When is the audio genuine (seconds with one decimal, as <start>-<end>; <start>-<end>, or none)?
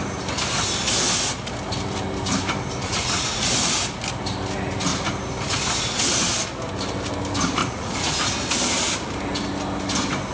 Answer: 0.0-2.8; 3.4-7.6; 8.2-10.3